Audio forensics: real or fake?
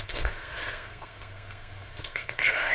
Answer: fake